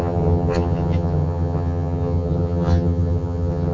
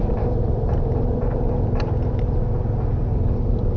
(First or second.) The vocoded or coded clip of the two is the first